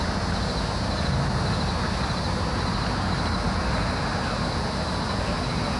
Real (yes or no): yes